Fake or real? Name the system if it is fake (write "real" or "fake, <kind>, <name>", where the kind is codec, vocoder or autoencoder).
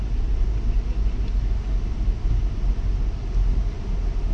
real